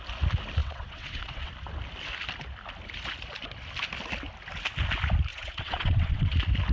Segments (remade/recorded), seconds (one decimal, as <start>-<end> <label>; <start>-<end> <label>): 0.0-0.6 recorded; 0.6-1.5 remade; 1.5-5.3 recorded; 5.3-6.3 remade; 6.3-6.7 recorded